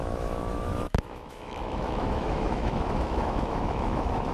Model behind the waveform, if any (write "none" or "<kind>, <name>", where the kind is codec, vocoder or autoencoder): autoencoder, DAC-VAE